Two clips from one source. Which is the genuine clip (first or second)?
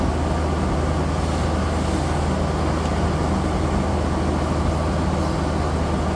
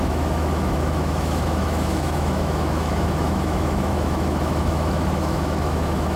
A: first